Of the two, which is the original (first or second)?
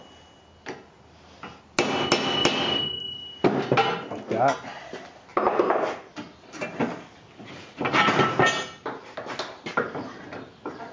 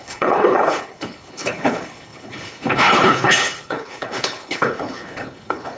first